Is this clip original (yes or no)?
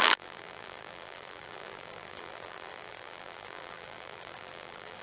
no